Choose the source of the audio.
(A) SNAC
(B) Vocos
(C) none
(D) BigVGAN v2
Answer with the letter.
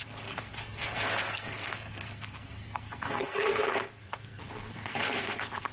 A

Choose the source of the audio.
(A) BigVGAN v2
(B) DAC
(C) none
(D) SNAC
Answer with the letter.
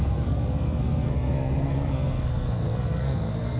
D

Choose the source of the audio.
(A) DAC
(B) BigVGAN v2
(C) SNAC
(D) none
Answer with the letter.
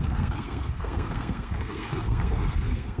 C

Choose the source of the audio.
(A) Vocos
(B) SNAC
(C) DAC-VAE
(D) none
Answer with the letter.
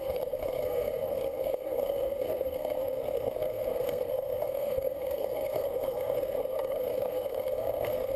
B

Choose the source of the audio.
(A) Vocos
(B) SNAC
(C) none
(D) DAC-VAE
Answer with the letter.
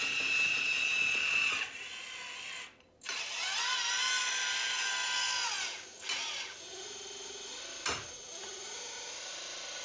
C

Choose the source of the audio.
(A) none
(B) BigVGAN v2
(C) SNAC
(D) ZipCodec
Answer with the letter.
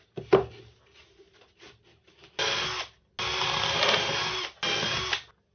A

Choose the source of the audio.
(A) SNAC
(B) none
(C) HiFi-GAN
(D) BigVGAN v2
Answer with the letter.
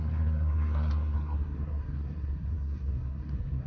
A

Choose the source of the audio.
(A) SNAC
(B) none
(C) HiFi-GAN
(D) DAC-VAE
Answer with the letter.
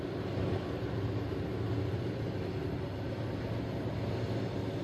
B